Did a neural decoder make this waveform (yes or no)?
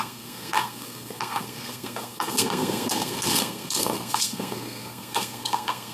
yes